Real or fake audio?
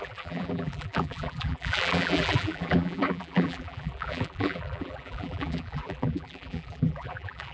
fake